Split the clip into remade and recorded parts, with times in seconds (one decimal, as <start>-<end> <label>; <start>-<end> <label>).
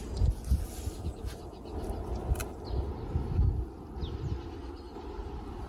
0.0-5.7 recorded